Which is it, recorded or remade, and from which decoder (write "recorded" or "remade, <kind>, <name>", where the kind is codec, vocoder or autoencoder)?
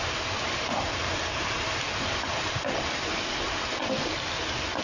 recorded